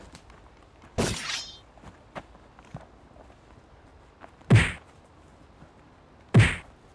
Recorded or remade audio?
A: recorded